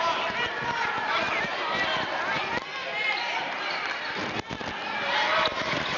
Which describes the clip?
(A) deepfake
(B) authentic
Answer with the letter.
B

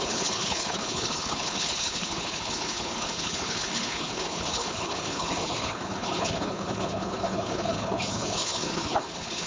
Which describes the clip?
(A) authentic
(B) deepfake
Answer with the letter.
B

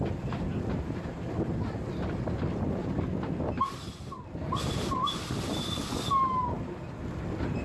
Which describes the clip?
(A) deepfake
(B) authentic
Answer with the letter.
B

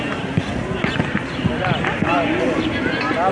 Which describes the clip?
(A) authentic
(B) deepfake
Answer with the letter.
A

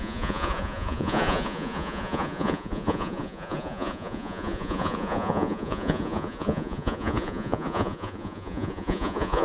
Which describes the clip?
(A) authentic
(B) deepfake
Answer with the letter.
B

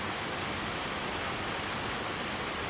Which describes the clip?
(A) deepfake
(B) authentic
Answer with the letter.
B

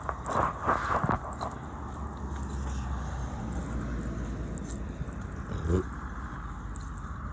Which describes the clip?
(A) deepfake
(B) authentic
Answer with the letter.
B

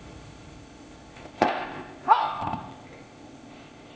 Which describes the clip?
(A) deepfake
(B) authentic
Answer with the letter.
A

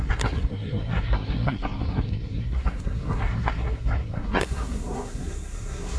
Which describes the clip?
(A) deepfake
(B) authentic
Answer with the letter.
A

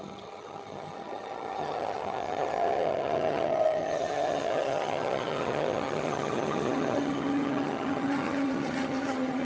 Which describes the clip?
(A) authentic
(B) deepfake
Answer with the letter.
B